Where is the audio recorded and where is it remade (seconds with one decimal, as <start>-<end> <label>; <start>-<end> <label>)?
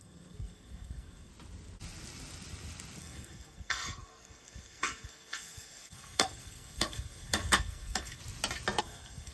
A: 0.0-1.3 remade; 1.3-3.0 recorded; 3.0-8.2 remade; 8.2-8.8 recorded; 8.8-9.3 remade